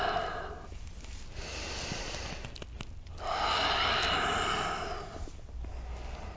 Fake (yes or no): no